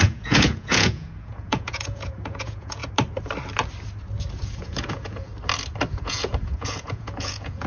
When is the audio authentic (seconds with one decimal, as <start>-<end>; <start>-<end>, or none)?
2.8-4.4; 5.3-5.9